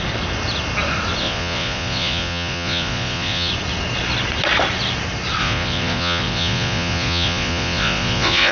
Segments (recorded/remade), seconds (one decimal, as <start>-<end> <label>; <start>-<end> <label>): 0.0-1.2 recorded; 1.2-3.5 remade; 3.5-5.4 recorded; 5.4-8.5 remade